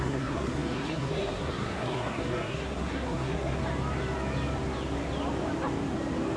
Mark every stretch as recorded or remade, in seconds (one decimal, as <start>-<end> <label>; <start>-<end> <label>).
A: 0.0-3.6 remade; 3.6-6.4 recorded